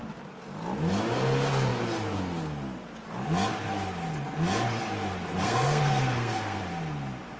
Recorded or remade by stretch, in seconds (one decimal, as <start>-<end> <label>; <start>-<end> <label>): 0.0-5.4 recorded; 5.4-6.6 remade; 6.6-7.4 recorded

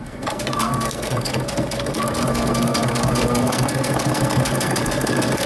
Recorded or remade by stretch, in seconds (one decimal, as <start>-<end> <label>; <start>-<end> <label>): 0.0-5.5 remade

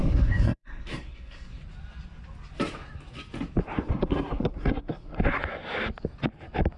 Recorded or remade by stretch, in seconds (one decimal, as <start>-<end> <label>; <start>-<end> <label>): 0.0-1.6 remade; 1.6-3.9 recorded; 3.9-5.2 remade; 5.2-6.8 recorded

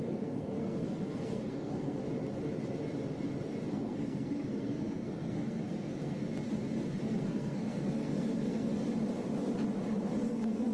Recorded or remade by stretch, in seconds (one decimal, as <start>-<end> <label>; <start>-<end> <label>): 0.0-2.0 remade; 2.0-3.7 recorded; 3.7-6.2 remade; 6.2-7.0 recorded; 7.0-8.7 remade; 8.7-10.2 recorded; 10.2-10.7 remade

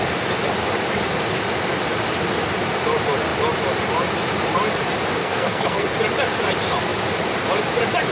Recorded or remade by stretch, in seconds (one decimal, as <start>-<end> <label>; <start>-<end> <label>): 0.0-5.2 recorded; 5.2-6.0 remade; 6.0-8.1 recorded

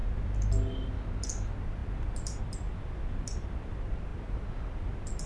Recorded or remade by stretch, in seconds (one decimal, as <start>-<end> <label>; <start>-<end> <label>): 0.0-5.3 recorded

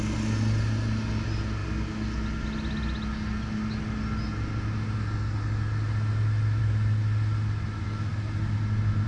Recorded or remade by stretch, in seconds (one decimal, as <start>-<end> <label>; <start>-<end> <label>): 0.0-9.1 recorded